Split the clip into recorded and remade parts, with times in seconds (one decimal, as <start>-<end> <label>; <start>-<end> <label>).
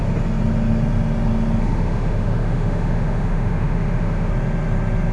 0.0-1.6 recorded; 1.6-4.3 remade; 4.3-5.1 recorded